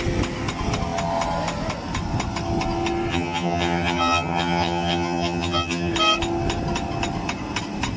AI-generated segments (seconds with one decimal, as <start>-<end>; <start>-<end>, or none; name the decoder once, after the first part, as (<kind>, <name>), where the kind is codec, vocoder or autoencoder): 3.1-5.9 (vocoder, HiFi-GAN)